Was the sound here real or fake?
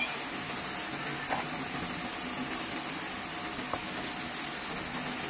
real